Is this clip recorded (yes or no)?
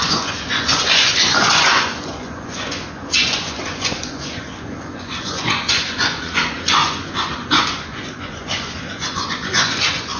no